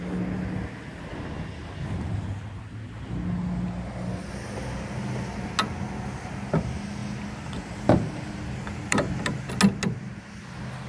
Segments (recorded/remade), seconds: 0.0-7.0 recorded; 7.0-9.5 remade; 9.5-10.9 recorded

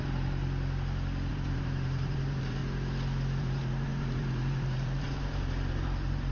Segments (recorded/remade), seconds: 0.0-0.4 remade; 0.4-1.3 recorded; 1.3-2.6 remade; 2.6-3.4 recorded; 3.4-6.3 remade

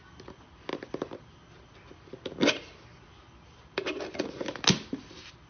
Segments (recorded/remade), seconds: 0.0-5.5 recorded

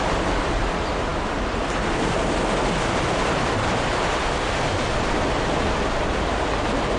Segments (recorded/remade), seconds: 0.0-7.0 recorded

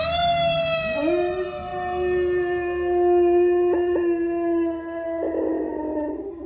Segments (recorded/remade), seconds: 0.0-6.5 recorded